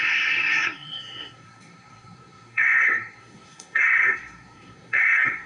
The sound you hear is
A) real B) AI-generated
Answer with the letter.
B